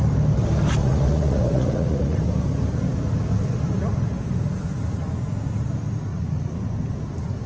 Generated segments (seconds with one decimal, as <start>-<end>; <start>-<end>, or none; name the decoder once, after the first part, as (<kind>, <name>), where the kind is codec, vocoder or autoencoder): 0.8-2.2 (vocoder, Vocos); 6.1-6.6